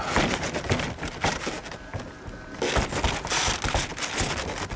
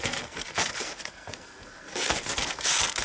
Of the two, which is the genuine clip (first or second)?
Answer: first